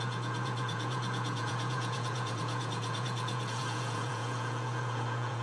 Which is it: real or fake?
fake